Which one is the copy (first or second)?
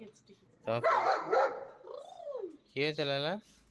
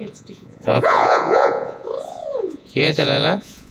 second